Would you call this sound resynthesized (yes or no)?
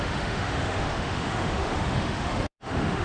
yes